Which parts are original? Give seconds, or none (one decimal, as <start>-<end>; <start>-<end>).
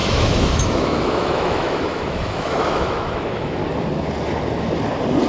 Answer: 3.6-5.3